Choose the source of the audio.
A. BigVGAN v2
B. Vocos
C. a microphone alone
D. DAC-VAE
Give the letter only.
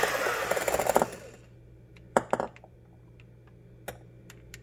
C